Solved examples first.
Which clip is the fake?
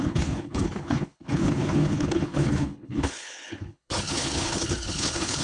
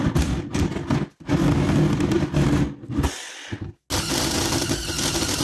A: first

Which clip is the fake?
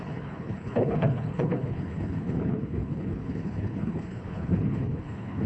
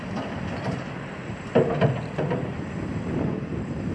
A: first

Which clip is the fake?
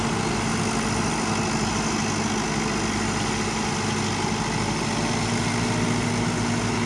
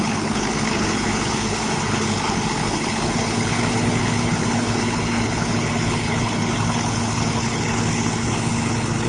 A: second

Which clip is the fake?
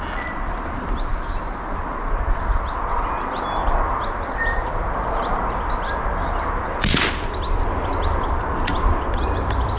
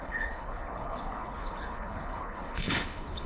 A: second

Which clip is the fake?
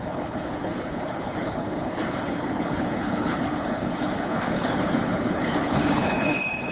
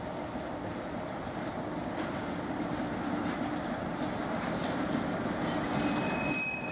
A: first